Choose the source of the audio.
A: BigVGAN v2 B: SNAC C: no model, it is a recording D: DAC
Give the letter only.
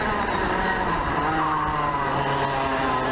C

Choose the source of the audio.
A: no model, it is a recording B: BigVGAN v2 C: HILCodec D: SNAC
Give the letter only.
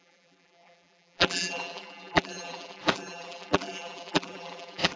B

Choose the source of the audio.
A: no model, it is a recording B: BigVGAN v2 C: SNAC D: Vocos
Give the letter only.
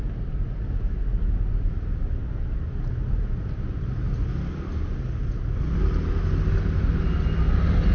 A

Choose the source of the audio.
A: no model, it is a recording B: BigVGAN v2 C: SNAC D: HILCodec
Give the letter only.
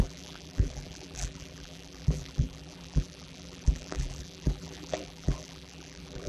B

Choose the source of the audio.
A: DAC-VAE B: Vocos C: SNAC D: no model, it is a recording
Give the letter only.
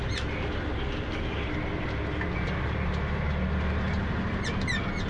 D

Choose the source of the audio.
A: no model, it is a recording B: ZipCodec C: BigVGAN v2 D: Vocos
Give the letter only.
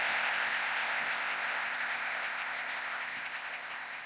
B